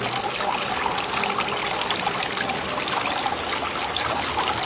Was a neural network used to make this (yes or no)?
no